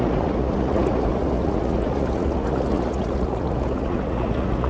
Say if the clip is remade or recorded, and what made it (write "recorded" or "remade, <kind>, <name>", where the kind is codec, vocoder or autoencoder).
remade, vocoder, Vocos